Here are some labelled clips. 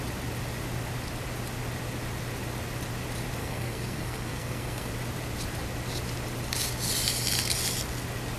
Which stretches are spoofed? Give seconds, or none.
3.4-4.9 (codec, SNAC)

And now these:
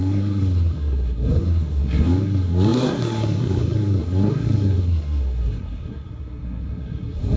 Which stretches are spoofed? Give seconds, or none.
0.0-7.4 (codec, SNAC)

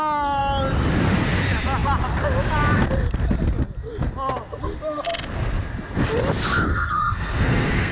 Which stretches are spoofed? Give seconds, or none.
6.7-7.9 (codec, SNAC)

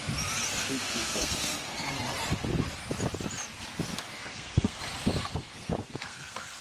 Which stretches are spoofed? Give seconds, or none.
0.6-1.9 (codec, SNAC); 3.9-4.8; 5.2-6.6

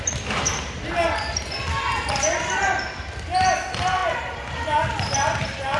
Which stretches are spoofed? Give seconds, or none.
none

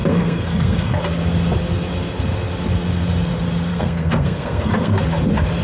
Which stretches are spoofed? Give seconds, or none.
0.0-1.0 (codec, SNAC); 3.7-5.0